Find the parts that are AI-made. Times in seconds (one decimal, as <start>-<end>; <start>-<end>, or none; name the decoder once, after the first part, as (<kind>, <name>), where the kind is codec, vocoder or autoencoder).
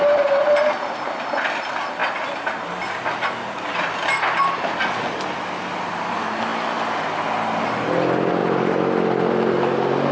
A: none